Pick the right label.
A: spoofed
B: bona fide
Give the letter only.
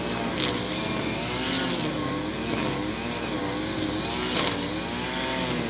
B